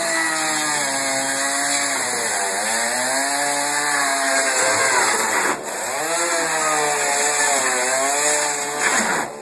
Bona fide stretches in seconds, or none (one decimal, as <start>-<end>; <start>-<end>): 0.0-9.4